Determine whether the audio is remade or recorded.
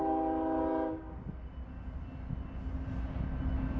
recorded